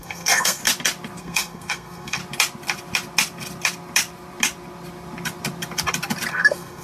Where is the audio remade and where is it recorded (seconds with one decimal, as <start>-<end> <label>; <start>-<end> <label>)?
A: 0.0-0.6 remade; 0.6-1.2 recorded; 1.2-2.2 remade; 2.2-6.3 recorded; 6.3-6.8 remade